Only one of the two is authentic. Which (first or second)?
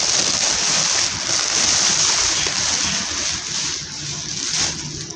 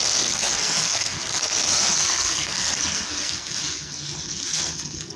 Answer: first